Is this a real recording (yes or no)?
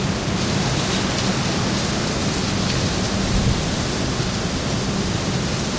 yes